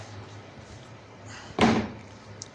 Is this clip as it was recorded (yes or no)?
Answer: no